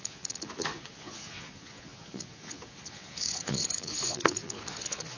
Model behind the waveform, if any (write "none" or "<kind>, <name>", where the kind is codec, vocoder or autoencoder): vocoder, Vocos